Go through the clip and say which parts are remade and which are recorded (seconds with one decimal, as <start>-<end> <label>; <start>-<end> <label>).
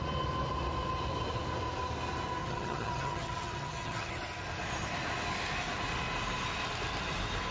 0.0-2.4 recorded; 2.4-4.1 remade; 4.1-7.5 recorded